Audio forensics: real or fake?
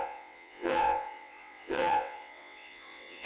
fake